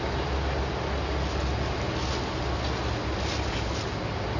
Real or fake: real